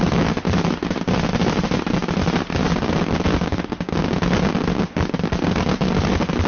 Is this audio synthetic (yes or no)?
no